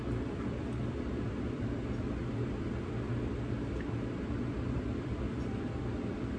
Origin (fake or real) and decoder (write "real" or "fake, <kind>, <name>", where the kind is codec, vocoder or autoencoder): fake, vocoder, BigVGAN v2